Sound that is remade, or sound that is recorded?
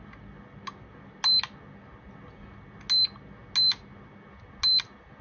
recorded